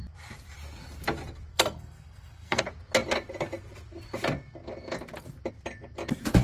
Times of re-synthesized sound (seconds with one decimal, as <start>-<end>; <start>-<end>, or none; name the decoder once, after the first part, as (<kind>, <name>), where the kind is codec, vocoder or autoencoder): 1.5-2.6 (codec, SNAC)